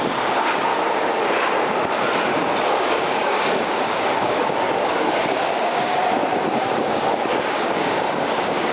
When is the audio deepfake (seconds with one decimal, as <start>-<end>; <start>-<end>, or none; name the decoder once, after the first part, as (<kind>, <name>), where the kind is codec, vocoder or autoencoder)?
0.0-0.7 (codec, DAC); 2.7-6.0; 6.5-8.7